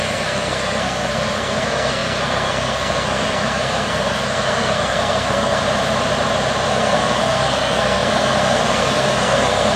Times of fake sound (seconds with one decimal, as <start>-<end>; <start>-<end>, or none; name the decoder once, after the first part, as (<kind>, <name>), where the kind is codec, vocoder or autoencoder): 0.0-5.6 (codec, SNAC); 6.7-9.8

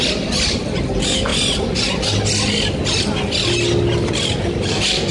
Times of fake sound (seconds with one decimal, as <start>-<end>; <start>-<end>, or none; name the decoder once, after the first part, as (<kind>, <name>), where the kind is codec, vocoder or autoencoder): none

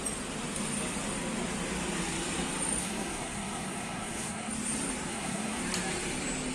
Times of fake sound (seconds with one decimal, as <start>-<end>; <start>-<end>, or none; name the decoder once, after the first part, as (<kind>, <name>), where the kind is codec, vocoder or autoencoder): 2.8-4.5 (codec, SNAC); 5.1-5.6